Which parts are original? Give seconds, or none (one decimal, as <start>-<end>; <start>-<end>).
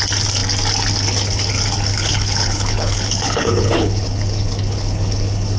0.0-1.9